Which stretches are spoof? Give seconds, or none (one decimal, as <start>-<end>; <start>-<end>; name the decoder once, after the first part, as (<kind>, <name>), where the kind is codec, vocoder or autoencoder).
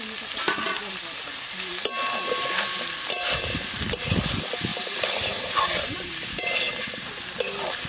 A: 4.7-7.2 (vocoder, BigVGAN v2)